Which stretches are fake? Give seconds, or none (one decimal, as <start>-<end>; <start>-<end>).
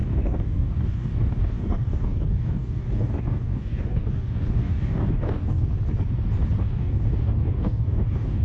0.0-5.7; 6.6-8.4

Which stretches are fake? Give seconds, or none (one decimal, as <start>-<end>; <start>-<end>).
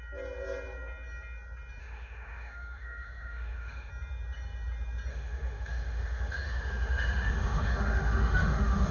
1.8-3.9; 5.1-8.9